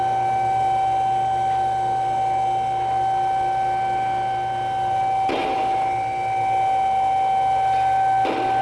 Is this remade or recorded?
recorded